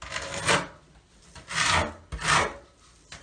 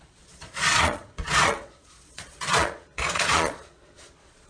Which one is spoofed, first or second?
second